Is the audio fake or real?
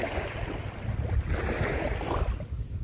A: real